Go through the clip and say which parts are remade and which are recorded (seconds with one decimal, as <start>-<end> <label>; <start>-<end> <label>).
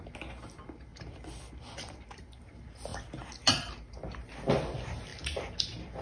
0.0-0.9 recorded; 0.9-2.4 remade; 2.4-6.0 recorded